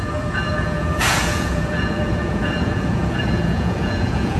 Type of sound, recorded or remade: remade